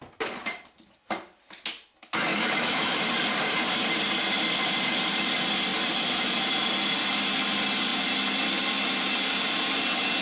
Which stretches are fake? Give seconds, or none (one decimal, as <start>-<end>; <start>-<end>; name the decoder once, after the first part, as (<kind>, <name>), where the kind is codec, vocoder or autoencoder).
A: 2.3-3.1 (autoencoder, DAC-VAE)